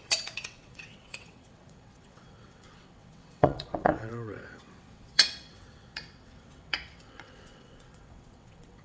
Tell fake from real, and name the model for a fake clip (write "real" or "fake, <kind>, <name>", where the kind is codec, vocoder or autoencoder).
fake, vocoder, WaveNeXt